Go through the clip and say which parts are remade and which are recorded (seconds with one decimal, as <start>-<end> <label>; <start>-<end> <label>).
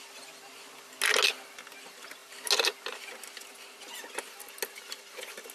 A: 0.0-5.5 recorded